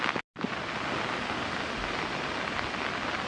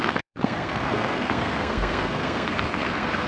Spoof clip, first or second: second